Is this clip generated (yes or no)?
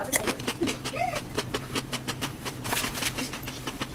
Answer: yes